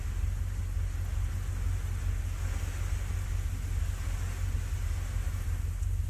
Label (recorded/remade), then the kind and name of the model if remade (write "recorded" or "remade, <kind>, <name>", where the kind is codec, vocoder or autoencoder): recorded